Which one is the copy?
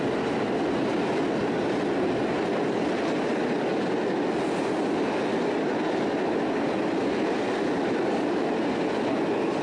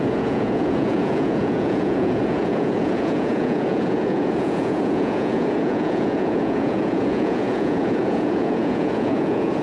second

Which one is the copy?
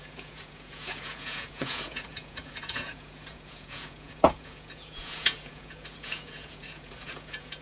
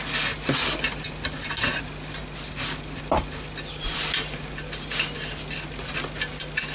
first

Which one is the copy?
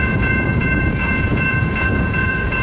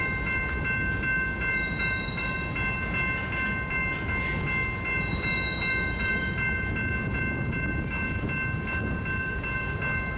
first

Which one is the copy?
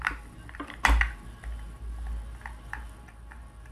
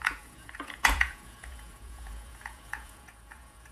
second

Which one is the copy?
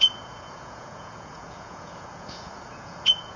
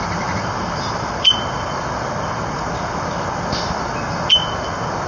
first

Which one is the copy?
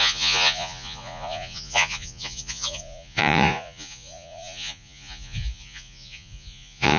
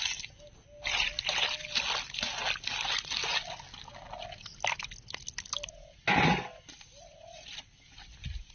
first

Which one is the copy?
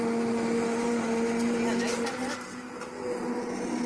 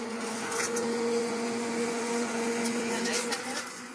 second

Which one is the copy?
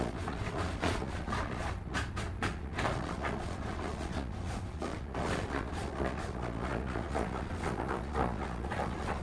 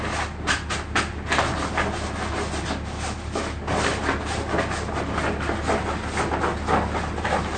first